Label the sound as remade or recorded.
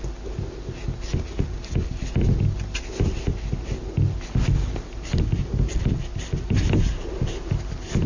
recorded